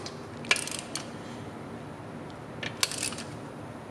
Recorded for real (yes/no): yes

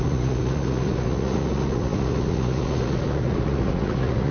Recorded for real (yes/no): no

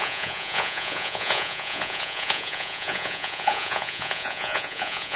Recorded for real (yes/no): no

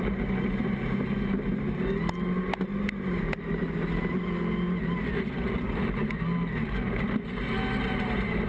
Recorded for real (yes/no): yes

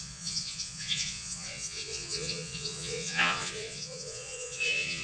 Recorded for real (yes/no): no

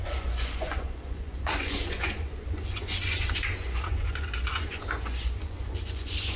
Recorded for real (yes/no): no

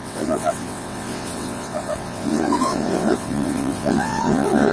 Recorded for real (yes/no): no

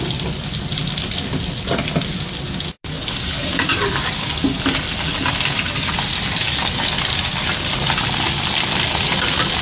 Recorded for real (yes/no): yes